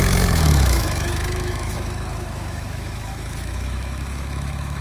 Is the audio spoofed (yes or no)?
yes